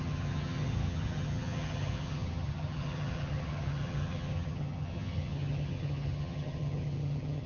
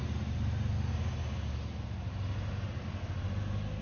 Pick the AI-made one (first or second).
first